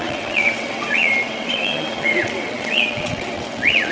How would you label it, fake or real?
fake